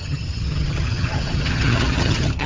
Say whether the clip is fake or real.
fake